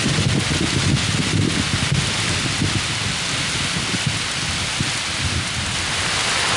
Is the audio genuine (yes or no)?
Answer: yes